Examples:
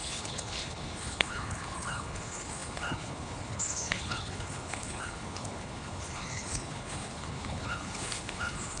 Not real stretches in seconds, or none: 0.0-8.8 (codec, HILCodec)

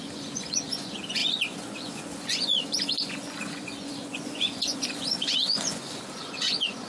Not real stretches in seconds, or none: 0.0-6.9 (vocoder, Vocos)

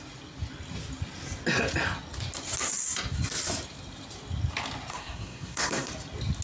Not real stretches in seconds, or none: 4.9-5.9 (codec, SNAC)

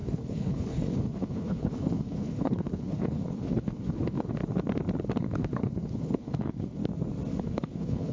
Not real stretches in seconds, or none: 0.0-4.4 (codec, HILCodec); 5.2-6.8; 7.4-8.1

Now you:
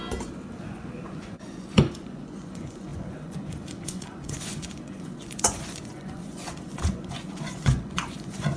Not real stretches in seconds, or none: 0.6-8.6 (vocoder, Vocos)

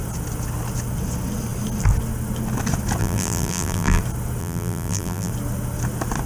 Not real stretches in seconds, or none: 3.0-4.0 (vocoder, BigVGAN v2); 4.4-5.3

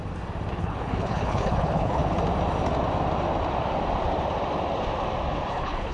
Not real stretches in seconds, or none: 0.6-2.0 (codec, HILCodec); 5.5-5.9

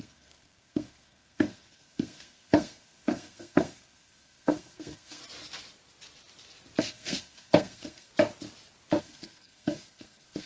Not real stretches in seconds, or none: 0.0-5.2 (codec, SNAC); 6.8-8.1; 9.0-10.5